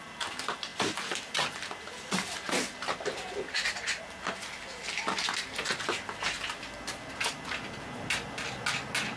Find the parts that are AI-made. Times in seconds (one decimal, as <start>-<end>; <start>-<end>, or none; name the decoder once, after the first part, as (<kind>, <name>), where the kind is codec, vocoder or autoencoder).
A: none